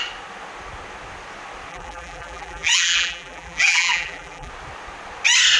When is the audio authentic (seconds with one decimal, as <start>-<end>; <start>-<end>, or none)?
0.0-1.7; 4.5-5.6